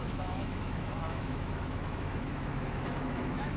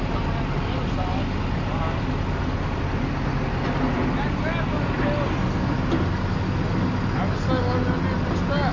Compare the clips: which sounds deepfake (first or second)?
first